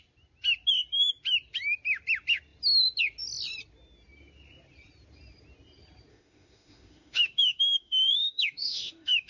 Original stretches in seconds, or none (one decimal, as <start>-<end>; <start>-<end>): 0.0-6.1